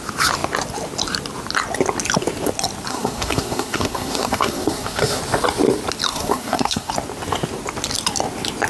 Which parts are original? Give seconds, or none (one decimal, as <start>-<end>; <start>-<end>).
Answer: 0.0-2.9; 5.2-6.1; 6.9-8.7